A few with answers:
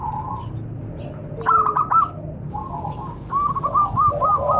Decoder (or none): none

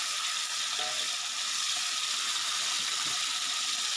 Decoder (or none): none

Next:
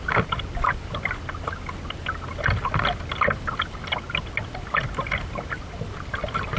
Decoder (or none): none